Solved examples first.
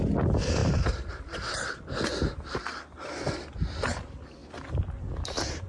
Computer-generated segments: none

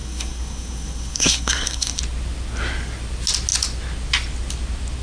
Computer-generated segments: 0.0-2.0 (codec, SNAC)

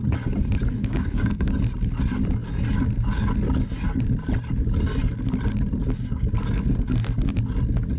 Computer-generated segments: 0.8-1.6 (codec, DAC); 5.8-6.7

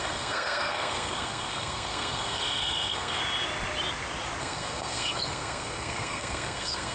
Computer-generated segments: 0.0-3.2 (codec, SNAC); 4.4-6.9